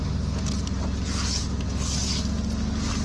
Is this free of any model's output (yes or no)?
yes